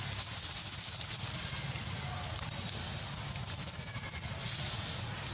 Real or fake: real